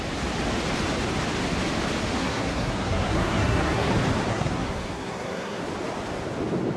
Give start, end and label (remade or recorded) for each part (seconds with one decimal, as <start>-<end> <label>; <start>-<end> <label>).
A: 0.0-2.2 recorded; 2.2-3.9 remade; 3.9-4.3 recorded; 4.3-5.6 remade; 5.6-6.8 recorded